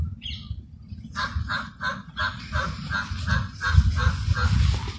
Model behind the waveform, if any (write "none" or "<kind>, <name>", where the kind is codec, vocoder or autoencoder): none